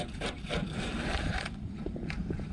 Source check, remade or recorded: remade